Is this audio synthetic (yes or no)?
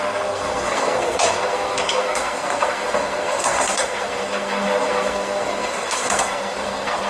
yes